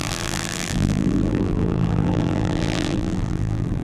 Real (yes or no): no